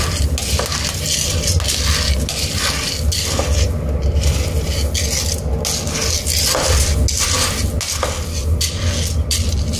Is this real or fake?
real